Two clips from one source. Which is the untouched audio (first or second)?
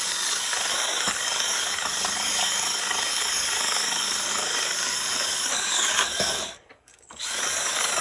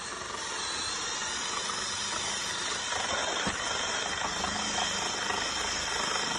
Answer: second